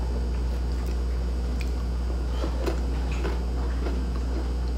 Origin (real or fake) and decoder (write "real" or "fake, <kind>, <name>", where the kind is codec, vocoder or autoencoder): real